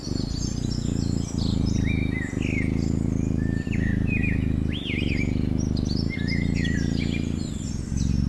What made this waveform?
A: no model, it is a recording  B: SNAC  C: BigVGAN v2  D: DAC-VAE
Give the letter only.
A